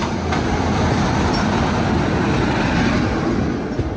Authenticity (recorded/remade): recorded